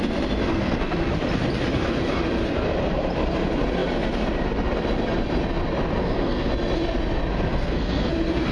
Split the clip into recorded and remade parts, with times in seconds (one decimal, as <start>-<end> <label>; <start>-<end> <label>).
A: 0.0-0.5 recorded; 0.5-1.1 remade; 1.1-6.0 recorded; 6.0-6.5 remade; 6.5-7.5 recorded; 7.5-8.1 remade; 8.1-8.5 recorded